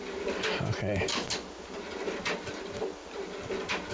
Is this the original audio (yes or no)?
yes